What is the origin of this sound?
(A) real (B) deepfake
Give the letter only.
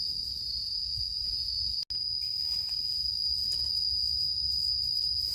A